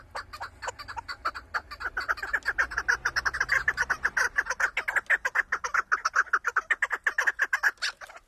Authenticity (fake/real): real